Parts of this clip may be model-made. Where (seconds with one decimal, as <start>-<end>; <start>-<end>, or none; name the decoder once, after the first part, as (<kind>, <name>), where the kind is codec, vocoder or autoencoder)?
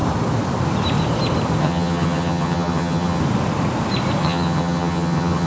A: 1.6-3.2 (vocoder, HiFi-GAN); 4.2-5.5